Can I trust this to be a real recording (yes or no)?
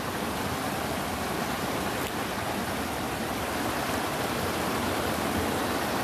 yes